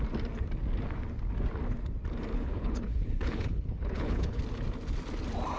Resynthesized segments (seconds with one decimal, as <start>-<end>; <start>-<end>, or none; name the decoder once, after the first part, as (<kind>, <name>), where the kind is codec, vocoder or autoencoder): 2.3-4.4 (codec, HILCodec)